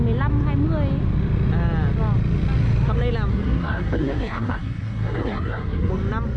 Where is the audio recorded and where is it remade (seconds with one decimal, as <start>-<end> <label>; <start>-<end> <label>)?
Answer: 0.0-3.3 recorded; 3.3-5.9 remade; 5.9-6.4 recorded